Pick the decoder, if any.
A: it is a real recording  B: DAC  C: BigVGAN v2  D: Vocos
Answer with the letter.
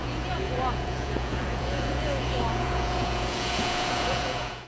D